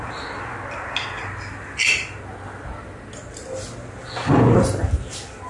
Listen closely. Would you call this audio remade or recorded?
recorded